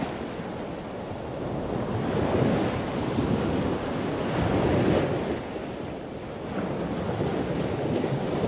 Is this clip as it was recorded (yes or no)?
yes